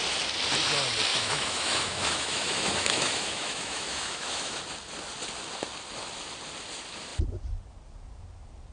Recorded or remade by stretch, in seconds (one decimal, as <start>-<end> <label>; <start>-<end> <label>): 0.0-1.1 recorded; 1.1-4.6 remade; 4.6-8.7 recorded